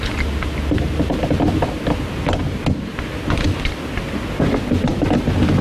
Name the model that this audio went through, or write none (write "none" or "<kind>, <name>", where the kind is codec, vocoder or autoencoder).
none